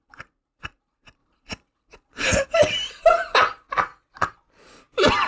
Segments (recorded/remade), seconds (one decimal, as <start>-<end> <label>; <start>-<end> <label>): 0.0-3.9 remade; 3.9-4.5 recorded; 4.5-5.3 remade